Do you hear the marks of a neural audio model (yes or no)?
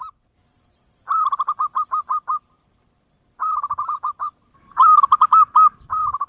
no